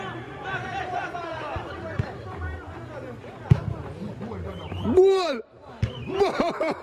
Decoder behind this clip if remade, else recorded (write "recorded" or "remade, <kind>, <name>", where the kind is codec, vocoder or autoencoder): remade, vocoder, BigVGAN v2